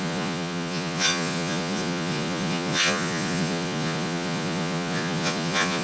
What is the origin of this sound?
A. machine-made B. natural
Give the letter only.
A